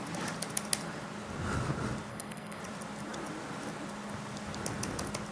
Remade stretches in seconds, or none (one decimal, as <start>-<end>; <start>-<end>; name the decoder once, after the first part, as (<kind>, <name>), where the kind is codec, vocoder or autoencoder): 2.1-2.6 (codec, SNAC)